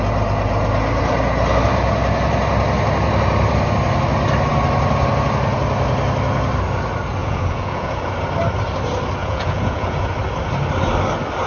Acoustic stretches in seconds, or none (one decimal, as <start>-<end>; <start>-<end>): 0.0-7.2; 8.1-9.2; 10.1-11.5